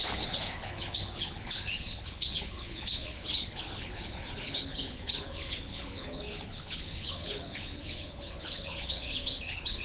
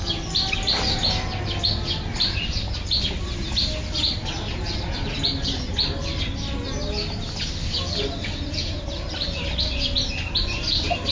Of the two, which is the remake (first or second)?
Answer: first